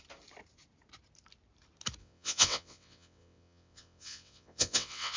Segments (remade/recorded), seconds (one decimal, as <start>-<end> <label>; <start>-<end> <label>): 0.0-2.0 recorded; 2.0-5.2 remade